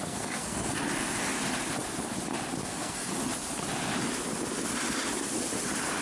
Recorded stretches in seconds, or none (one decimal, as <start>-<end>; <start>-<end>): 0.8-2.6; 3.1-6.0